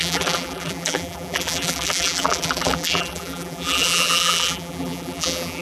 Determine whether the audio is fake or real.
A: fake